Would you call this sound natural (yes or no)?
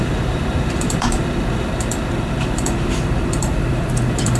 no